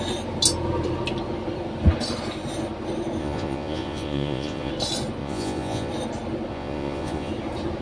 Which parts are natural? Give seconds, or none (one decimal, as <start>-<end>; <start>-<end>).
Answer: 0.0-3.2; 4.7-5.2; 5.9-6.5; 7.3-7.8